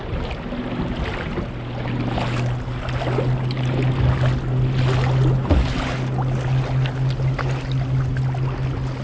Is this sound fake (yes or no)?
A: no